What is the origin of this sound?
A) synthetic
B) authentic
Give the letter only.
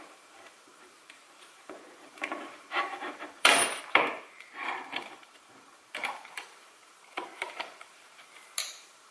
A